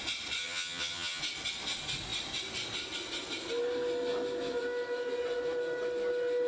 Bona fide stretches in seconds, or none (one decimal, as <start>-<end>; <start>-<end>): 0.0-0.4; 1.2-6.5